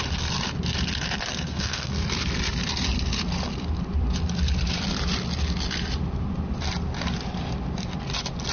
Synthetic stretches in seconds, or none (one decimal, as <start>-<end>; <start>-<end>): 1.3-1.9